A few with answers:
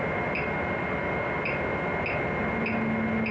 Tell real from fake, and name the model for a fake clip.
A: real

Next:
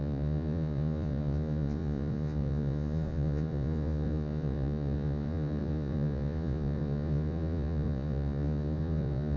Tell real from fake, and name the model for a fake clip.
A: fake, vocoder, Vocos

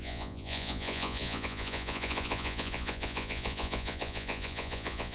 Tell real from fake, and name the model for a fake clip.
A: fake, vocoder, Vocos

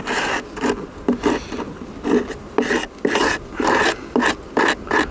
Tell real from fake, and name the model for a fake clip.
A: real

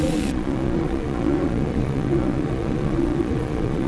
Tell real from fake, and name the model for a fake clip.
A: fake, vocoder, Vocos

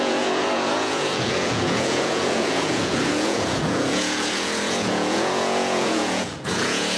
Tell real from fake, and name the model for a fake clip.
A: fake, vocoder, Vocos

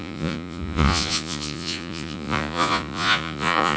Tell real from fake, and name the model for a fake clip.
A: fake, vocoder, Vocos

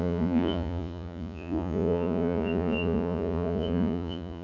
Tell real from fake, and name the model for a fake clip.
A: fake, vocoder, Vocos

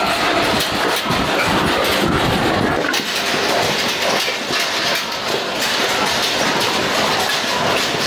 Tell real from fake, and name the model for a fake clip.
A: real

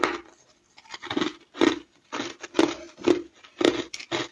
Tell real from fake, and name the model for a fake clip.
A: real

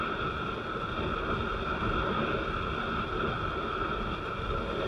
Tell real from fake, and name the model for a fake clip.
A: real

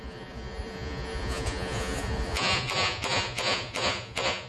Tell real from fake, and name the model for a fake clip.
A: fake, vocoder, Vocos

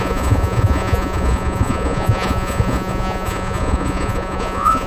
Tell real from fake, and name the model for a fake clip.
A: fake, vocoder, Vocos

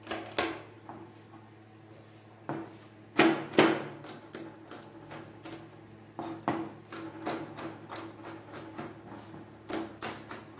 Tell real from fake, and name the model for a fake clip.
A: real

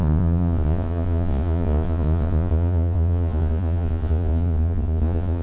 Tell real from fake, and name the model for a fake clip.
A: fake, vocoder, Vocos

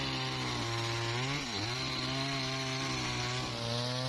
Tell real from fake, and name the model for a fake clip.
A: real